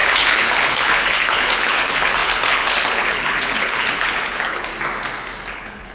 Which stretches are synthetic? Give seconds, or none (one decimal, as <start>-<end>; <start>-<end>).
0.0-4.7; 5.5-5.9